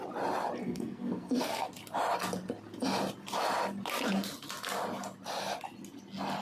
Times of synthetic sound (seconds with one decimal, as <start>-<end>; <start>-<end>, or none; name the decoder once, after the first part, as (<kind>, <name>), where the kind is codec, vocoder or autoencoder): 0.6-1.7 (codec, SNAC)